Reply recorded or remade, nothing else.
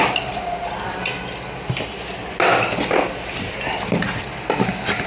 recorded